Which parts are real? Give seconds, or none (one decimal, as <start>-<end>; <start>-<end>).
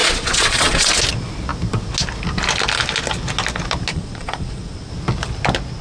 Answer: 0.9-3.9; 4.9-5.8